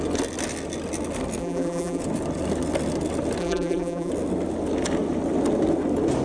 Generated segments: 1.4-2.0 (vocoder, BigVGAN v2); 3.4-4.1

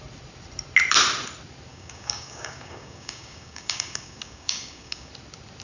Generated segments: 1.7-5.1 (codec, DAC)

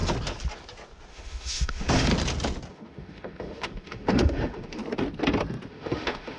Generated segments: 1.1-2.1 (autoencoder, DAC-VAE); 2.7-4.8; 5.7-6.4

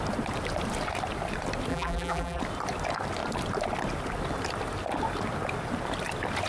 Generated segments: 1.7-2.4 (vocoder, BigVGAN v2)